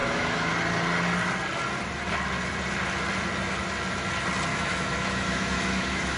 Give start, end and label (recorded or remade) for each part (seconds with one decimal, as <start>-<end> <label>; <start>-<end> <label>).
0.0-0.5 remade; 0.5-4.5 recorded; 4.5-6.2 remade